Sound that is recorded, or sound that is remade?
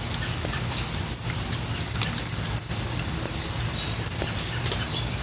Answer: remade